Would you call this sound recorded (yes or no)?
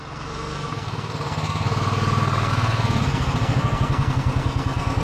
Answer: no